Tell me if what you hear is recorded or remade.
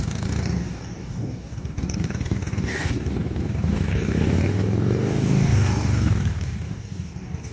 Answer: remade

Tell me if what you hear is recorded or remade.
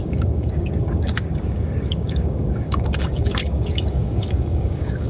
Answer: remade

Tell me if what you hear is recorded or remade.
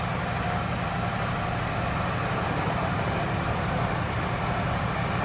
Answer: recorded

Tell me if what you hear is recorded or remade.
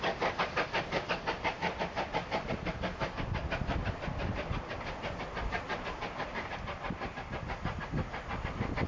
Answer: recorded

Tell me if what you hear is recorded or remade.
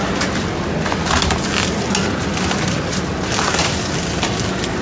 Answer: recorded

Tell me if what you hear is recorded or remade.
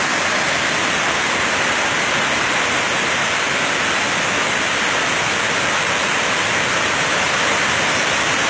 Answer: recorded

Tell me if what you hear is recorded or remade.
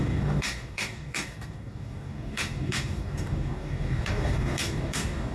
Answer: remade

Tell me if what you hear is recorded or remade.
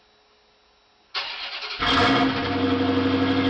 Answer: recorded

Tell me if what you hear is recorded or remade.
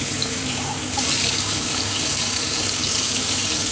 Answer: remade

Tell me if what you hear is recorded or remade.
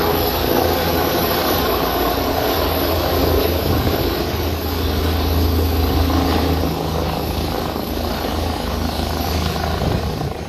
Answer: remade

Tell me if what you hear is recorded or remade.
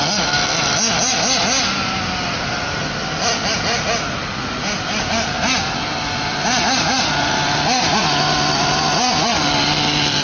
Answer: recorded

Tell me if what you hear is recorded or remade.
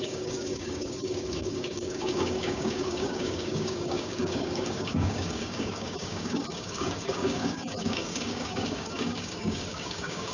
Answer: remade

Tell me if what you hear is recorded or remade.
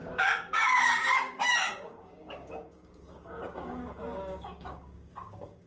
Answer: remade